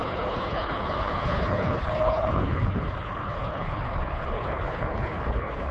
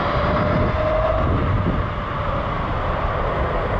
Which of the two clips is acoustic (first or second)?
second